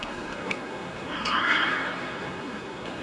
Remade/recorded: remade